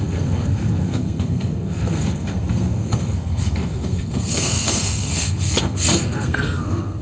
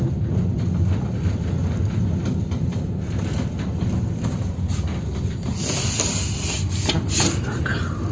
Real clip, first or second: second